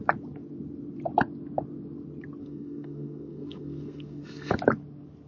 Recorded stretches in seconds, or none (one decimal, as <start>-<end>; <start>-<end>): 0.0-2.4; 4.5-5.3